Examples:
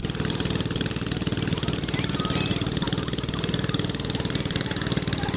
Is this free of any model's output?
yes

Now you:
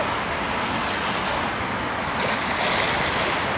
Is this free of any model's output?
yes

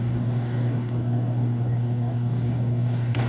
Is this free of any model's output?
no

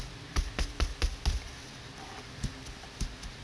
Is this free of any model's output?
yes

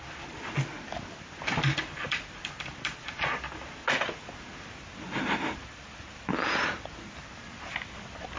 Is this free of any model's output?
yes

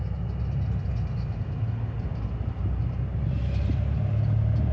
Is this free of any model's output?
yes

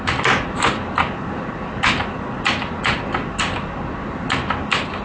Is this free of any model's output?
yes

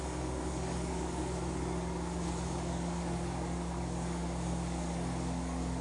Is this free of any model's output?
no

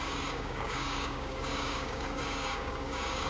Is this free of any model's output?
no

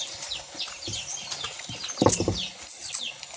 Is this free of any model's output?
yes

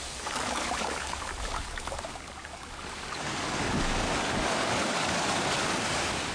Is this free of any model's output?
no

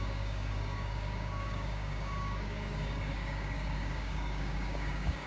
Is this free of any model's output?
no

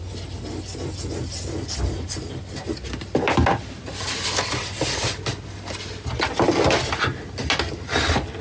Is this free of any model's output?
yes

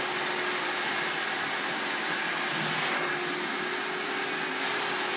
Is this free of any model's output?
yes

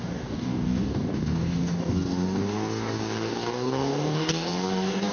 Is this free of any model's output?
no